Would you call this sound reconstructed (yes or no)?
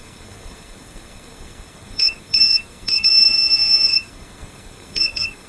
yes